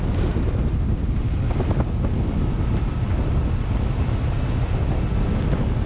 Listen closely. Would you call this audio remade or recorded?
recorded